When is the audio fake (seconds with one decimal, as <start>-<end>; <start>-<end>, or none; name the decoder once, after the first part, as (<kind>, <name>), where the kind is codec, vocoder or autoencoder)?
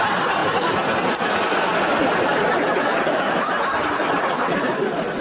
none